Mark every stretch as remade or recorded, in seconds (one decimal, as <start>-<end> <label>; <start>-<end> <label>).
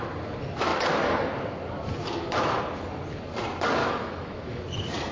0.0-3.8 recorded; 3.8-4.6 remade; 4.6-5.1 recorded